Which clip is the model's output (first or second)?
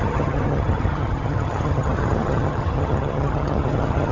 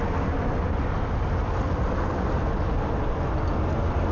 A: first